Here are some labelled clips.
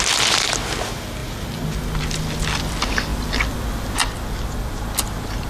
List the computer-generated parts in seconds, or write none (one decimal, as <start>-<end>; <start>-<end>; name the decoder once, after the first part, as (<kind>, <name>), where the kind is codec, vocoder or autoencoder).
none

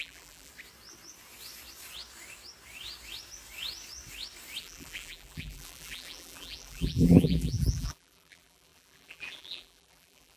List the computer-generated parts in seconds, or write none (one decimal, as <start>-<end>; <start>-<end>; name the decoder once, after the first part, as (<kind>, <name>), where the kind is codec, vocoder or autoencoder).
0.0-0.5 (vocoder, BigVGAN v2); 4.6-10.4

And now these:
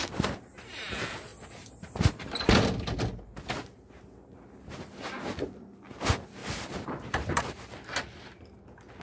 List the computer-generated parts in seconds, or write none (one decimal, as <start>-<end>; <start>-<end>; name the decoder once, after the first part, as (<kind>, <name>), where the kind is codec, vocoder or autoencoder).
6.4-7.4 (vocoder, BigVGAN v2)